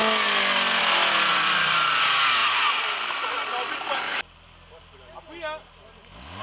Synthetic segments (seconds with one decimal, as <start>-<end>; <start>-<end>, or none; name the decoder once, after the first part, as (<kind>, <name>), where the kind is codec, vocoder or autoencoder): 1.3-2.0 (vocoder, Vocos)